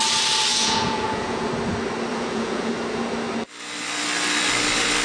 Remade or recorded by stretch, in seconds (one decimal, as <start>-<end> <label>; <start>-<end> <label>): 0.0-0.5 recorded; 0.5-1.5 remade; 1.5-2.1 recorded; 2.1-2.7 remade; 2.7-5.0 recorded